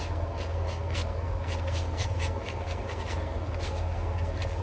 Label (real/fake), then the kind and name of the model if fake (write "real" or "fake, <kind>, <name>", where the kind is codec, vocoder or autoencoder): fake, codec, SNAC